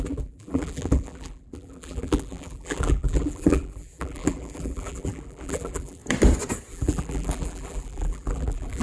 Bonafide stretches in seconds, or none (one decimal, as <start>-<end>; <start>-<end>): 6.0-6.7